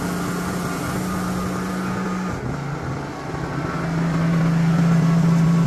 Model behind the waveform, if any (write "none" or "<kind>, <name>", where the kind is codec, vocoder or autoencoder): none